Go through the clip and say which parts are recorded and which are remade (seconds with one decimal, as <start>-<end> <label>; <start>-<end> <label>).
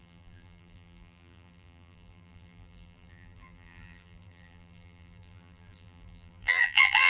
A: 0.0-7.1 remade